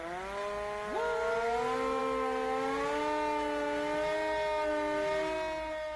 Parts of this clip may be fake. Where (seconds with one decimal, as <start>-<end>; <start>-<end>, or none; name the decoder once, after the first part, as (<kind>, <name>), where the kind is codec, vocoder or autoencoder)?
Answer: none